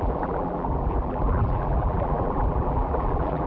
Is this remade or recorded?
remade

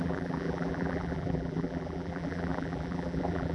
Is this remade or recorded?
remade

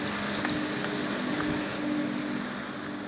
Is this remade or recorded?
recorded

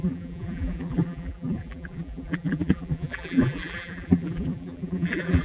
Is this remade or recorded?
remade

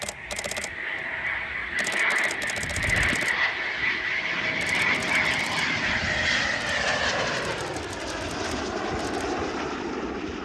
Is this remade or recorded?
remade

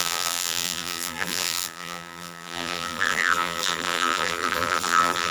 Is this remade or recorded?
remade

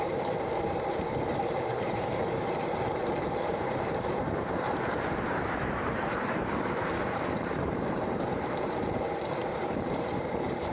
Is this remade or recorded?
remade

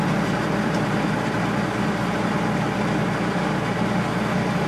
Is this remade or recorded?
recorded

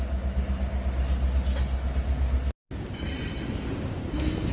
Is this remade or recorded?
recorded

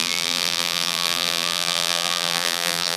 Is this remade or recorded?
remade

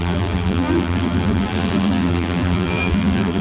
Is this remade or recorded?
remade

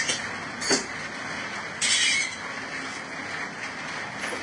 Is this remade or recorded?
recorded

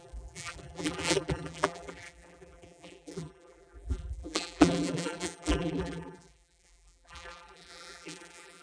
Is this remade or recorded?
remade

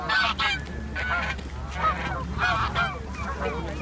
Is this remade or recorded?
recorded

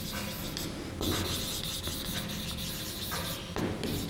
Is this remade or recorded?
recorded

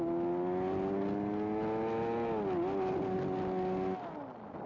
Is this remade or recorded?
recorded